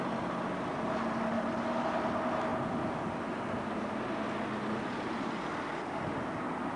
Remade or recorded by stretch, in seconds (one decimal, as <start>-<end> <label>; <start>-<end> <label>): 0.0-6.8 recorded